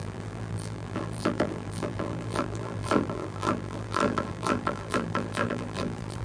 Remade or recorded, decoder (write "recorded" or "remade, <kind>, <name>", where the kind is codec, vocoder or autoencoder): remade, vocoder, BigVGAN v2